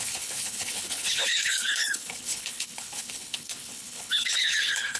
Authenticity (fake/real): fake